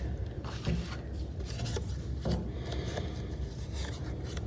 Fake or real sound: real